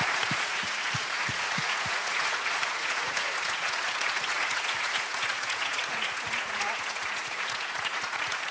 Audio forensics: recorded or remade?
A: remade